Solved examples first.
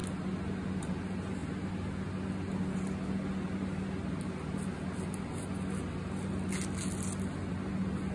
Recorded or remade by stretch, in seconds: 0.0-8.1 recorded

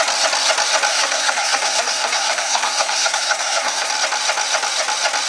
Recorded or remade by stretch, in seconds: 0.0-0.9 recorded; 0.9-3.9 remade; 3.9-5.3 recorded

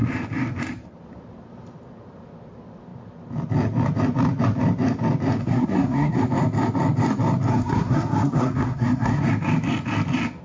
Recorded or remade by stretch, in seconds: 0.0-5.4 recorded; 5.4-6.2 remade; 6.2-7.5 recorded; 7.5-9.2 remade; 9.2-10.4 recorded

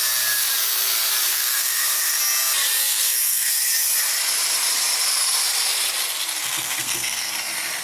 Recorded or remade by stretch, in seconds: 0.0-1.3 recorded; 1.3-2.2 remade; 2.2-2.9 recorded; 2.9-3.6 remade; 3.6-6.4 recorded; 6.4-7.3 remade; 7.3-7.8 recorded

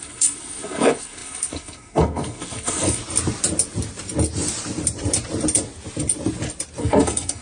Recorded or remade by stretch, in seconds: 0.0-3.0 remade; 3.0-6.8 recorded; 6.8-7.4 remade